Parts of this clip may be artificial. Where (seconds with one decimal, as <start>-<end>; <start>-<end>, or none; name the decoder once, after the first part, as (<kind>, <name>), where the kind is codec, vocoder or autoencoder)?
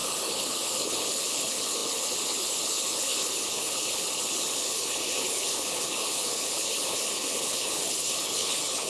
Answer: 0.0-8.9 (codec, HILCodec)